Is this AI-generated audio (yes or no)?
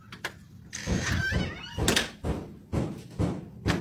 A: no